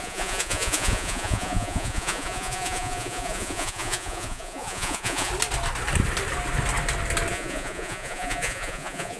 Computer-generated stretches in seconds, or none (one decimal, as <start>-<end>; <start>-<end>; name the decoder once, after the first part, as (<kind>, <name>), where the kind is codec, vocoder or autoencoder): 0.0-5.3 (vocoder, Vocos); 7.3-9.2